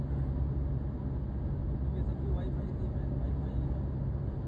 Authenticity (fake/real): real